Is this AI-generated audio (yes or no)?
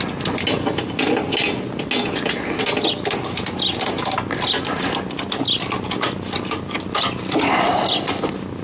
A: no